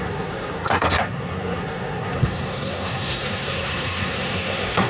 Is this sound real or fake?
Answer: fake